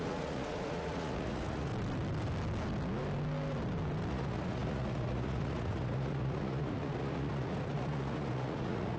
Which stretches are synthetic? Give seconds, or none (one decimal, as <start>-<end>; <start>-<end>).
0.0-1.7; 4.1-9.0